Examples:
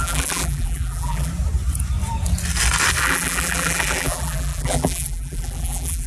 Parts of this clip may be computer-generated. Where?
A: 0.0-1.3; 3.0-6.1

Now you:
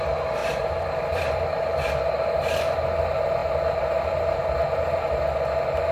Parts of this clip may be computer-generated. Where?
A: 0.4-2.1; 4.6-5.2

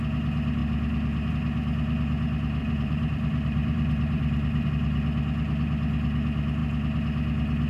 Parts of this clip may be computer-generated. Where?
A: 2.6-4.7

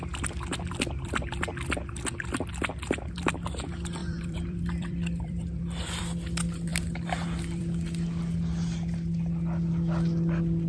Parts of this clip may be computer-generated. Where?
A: 4.0-6.0

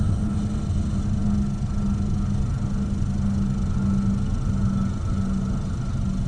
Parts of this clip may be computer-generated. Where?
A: none

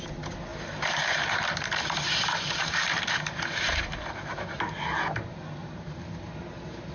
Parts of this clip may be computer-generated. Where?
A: 0.5-4.6; 5.6-6.9